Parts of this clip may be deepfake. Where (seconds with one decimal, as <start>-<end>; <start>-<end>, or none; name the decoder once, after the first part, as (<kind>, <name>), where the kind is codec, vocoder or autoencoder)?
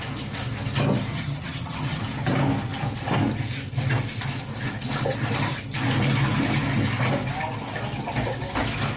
1.1-2.0 (vocoder, HiFi-GAN)